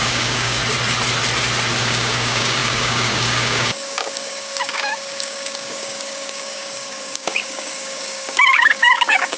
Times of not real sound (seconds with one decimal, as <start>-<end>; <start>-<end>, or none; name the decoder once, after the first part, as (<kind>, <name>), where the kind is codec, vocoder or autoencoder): 0.0-0.6 (codec, DAC); 1.8-9.4